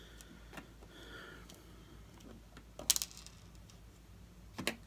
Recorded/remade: recorded